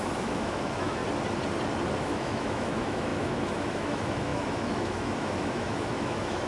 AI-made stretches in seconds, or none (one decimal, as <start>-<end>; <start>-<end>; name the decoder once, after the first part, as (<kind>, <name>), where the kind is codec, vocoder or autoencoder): 0.0-1.0 (autoencoder, DAC-VAE); 2.0-6.5